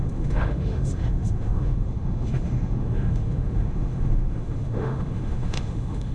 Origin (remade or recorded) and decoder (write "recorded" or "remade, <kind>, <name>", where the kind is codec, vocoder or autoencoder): remade, autoencoder, DAC-VAE